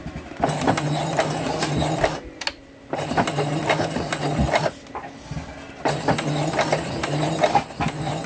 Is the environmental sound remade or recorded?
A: recorded